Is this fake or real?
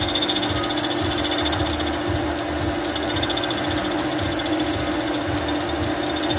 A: real